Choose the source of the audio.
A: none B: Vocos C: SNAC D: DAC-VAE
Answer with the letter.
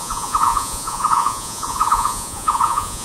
B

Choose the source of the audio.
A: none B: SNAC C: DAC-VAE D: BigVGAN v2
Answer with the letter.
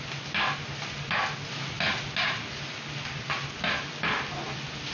A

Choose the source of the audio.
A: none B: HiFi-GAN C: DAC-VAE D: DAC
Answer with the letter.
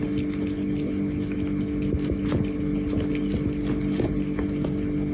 A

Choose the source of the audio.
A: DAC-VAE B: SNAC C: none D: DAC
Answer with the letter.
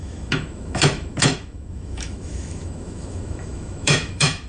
A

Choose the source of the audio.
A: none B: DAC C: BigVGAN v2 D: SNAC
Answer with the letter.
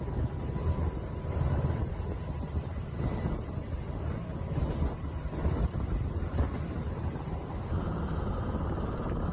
C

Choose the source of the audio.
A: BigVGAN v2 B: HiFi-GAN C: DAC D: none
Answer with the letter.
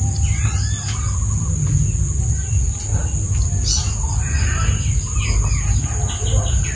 D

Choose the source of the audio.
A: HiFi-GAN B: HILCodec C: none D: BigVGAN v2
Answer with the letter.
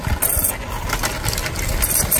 C